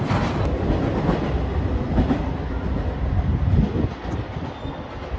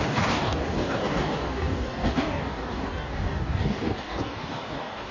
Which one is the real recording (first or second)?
first